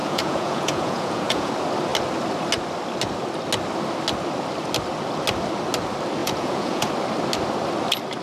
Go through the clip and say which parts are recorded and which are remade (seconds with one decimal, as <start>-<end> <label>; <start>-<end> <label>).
0.0-1.5 remade; 1.5-6.2 recorded; 6.2-6.9 remade; 6.9-8.2 recorded